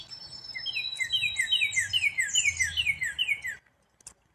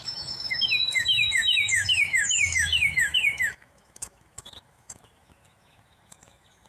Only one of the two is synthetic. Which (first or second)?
second